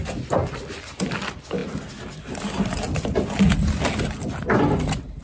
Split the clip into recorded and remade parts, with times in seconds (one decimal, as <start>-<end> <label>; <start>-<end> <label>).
0.0-5.2 recorded